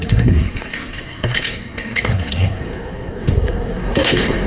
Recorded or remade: remade